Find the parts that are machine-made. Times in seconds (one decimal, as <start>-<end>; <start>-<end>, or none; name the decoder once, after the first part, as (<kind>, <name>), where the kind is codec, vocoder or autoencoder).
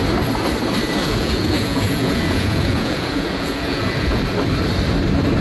1.0-4.2 (vocoder, Vocos)